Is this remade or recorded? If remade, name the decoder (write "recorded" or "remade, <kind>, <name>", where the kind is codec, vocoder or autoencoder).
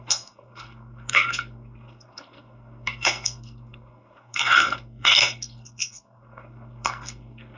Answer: remade, codec, SNAC